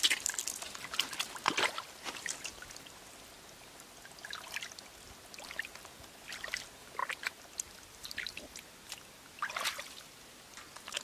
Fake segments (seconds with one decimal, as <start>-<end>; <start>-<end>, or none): none